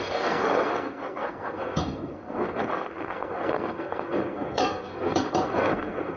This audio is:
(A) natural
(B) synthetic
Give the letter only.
B